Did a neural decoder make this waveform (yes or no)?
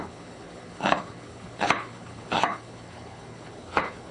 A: yes